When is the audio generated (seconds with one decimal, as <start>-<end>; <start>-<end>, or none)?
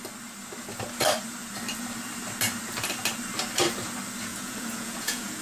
4.3-5.4